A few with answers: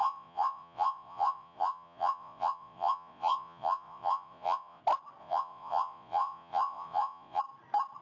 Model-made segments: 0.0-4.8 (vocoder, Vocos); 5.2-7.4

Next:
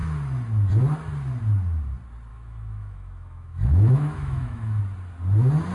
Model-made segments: 2.3-4.8 (autoencoder, DAC-VAE)

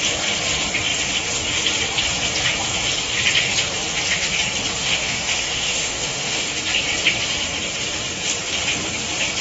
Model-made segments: 4.8-6.5 (autoencoder, DAC-VAE)

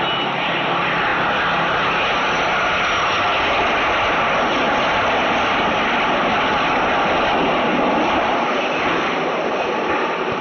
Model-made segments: none

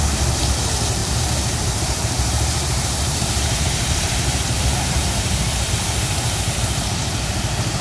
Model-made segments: 1.0-5.7 (vocoder, BigVGAN v2)